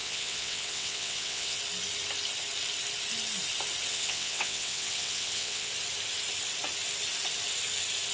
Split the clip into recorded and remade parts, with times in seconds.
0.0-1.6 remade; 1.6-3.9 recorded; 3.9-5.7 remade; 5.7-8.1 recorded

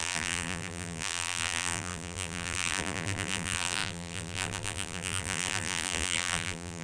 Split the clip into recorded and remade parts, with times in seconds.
0.0-6.8 remade

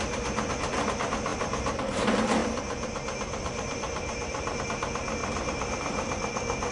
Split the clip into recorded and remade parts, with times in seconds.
0.0-2.4 recorded; 2.4-4.6 remade; 4.6-5.2 recorded; 5.2-6.7 remade

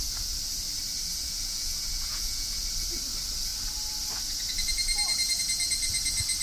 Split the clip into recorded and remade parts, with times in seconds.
0.0-1.1 recorded; 1.1-2.6 remade; 2.6-6.4 recorded

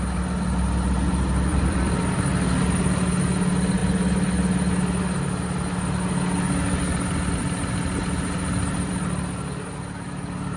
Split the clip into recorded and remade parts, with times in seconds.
0.0-1.5 recorded; 1.5-2.0 remade; 2.0-10.6 recorded

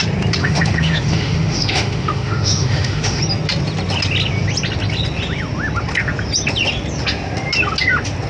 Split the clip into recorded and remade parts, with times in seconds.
0.0-0.4 recorded; 0.4-3.2 remade; 3.2-8.3 recorded

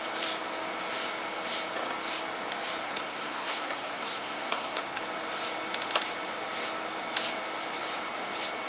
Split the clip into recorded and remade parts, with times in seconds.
0.0-2.8 recorded; 2.8-5.0 remade; 5.0-8.7 recorded